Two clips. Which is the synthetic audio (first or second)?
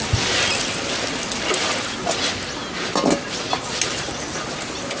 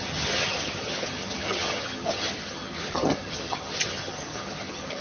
second